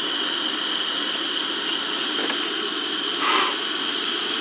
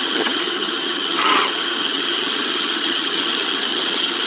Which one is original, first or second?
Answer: first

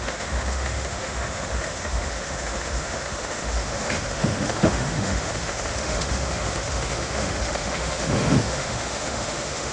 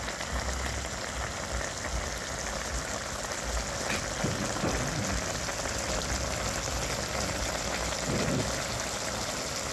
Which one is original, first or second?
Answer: second